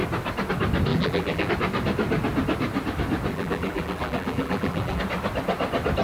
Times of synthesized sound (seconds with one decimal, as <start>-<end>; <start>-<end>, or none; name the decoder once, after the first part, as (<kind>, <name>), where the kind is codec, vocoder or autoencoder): 0.9-1.5 (vocoder, BigVGAN v2); 3.3-5.0